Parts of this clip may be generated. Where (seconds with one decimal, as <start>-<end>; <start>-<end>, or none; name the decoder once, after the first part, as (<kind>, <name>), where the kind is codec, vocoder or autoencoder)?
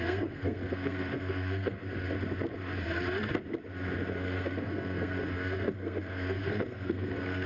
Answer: 0.0-1.8 (codec, SNAC); 4.1-7.5